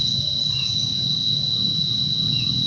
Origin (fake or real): fake